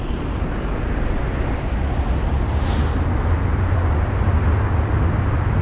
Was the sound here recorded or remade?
recorded